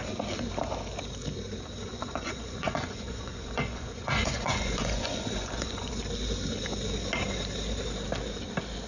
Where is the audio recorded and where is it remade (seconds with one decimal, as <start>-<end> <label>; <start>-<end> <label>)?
0.0-1.9 recorded; 1.9-5.9 remade; 5.9-8.9 recorded